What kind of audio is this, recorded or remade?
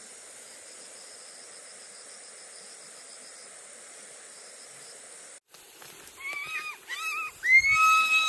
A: recorded